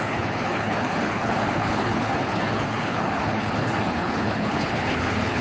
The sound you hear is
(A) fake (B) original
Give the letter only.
A